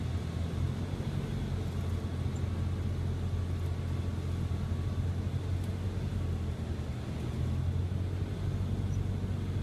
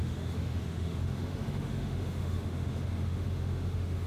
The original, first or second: first